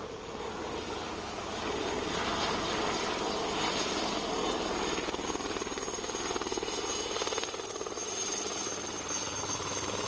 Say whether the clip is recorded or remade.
remade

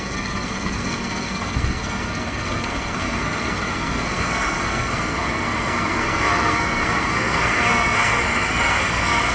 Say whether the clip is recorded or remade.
remade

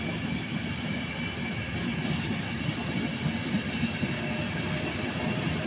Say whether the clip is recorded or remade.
recorded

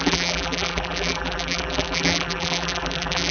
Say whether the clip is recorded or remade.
remade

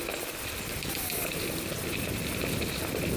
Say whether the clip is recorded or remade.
recorded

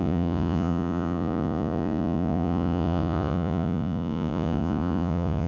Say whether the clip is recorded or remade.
remade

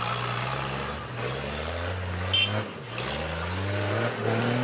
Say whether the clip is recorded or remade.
recorded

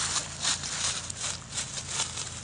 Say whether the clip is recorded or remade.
recorded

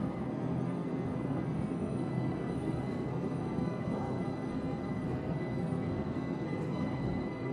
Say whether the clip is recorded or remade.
remade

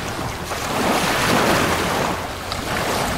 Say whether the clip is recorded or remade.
recorded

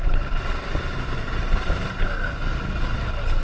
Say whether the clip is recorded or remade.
recorded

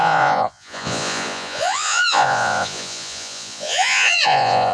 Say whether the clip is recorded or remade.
remade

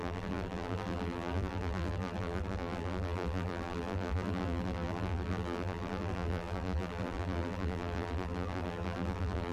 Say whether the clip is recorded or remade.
remade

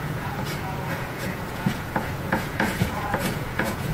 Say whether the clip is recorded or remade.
remade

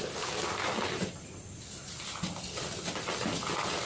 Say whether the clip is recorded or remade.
recorded